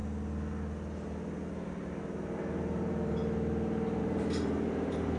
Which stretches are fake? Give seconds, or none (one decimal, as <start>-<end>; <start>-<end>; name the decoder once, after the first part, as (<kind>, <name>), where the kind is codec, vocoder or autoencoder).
2.0-3.2 (vocoder, BigVGAN v2); 4.0-5.2